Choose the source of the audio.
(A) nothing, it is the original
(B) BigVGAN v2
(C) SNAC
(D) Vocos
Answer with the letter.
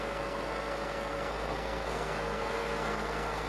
C